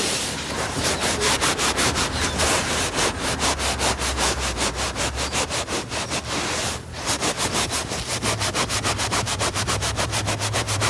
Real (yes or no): no